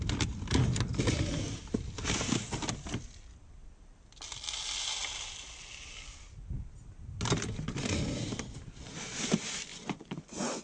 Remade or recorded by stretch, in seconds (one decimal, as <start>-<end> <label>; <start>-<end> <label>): 0.0-9.7 recorded; 9.7-10.6 remade